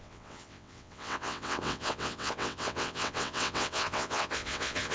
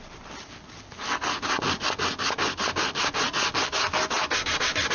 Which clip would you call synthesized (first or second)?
first